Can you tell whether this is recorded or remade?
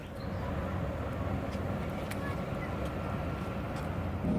recorded